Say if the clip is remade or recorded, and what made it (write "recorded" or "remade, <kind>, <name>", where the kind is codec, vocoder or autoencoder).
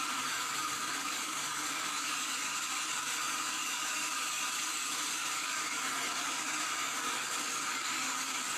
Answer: remade, codec, DAC